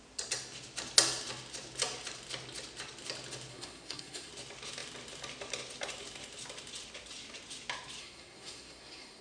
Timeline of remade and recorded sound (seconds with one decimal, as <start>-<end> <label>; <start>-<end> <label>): 0.0-3.5 recorded; 3.5-4.3 remade; 4.3-8.0 recorded; 8.0-9.2 remade